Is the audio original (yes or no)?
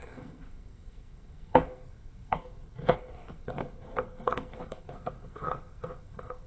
no